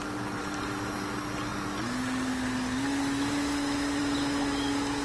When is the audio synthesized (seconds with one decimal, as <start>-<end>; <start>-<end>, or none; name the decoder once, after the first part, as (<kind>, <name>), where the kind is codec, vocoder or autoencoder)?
none